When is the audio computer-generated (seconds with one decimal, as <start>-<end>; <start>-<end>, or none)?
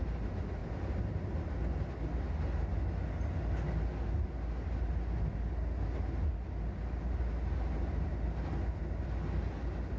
none